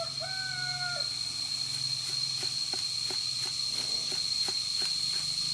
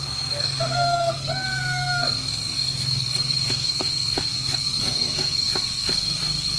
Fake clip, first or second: second